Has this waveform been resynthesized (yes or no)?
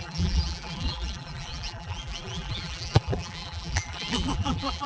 yes